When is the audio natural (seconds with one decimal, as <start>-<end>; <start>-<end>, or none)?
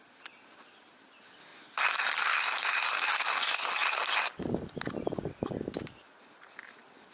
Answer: 0.0-7.1